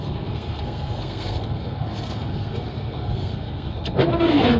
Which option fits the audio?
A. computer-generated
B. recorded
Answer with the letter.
A